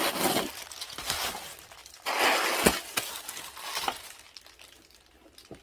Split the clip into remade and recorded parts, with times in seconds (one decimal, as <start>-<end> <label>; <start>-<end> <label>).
0.0-5.6 recorded